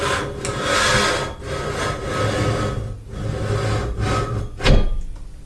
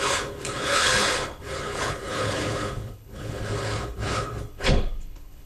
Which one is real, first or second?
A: first